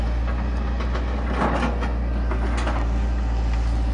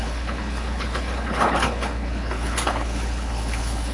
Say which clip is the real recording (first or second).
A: first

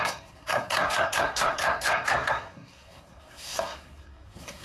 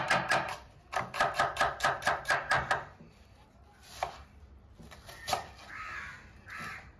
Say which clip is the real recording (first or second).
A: second